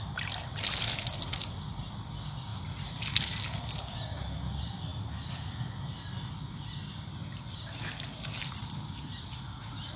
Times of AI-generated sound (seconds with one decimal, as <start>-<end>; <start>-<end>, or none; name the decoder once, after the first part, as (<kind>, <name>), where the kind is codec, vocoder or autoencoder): none